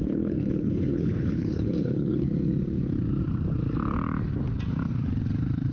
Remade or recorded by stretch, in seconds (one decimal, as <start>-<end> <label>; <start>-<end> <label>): 0.0-2.3 remade; 2.3-5.7 recorded